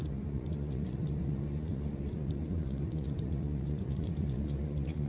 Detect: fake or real fake